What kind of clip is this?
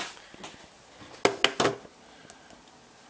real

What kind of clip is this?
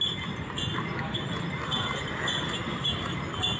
real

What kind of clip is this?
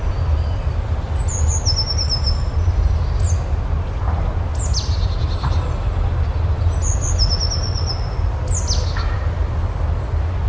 real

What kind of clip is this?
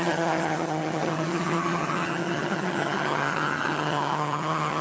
fake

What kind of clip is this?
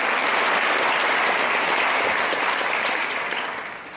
real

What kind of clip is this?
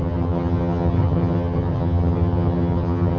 fake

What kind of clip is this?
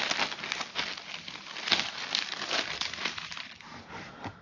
real